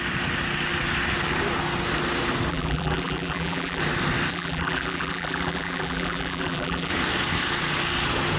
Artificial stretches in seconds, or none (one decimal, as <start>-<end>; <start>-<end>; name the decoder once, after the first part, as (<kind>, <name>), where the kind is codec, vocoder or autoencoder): 2.5-3.8 (vocoder, BigVGAN v2); 4.3-6.9